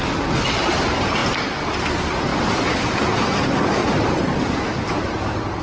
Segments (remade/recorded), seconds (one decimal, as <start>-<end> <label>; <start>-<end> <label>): 0.0-2.3 recorded; 2.3-3.1 remade; 3.1-3.8 recorded; 3.8-4.4 remade; 4.4-5.6 recorded